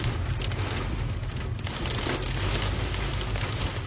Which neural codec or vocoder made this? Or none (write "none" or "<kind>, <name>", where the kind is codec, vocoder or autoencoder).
none